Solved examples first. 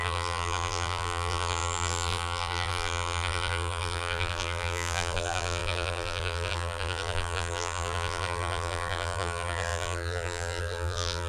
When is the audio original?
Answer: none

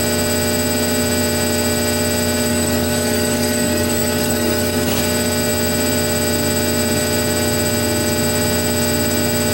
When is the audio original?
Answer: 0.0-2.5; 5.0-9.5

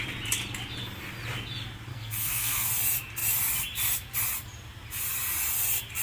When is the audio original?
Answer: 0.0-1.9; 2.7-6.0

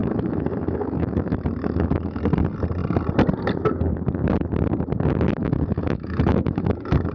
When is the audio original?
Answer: 2.2-5.4